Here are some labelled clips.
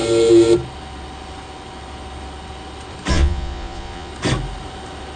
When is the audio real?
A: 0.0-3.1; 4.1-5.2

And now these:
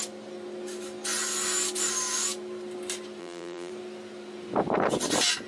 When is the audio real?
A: 0.0-3.2; 3.7-5.5

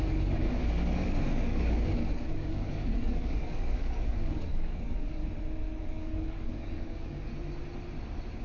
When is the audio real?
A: 5.2-5.8; 7.3-8.4

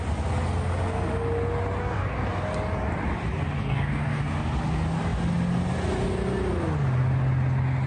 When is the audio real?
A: 0.0-1.8; 2.4-3.6; 4.2-7.9